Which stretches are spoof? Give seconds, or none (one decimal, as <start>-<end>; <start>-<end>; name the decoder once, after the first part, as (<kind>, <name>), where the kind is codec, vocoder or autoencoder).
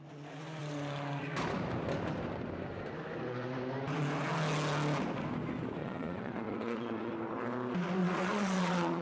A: 5.8-7.1 (vocoder, Vocos); 8.0-9.0